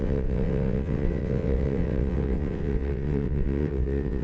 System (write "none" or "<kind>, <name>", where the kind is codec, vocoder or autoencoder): vocoder, WaveNeXt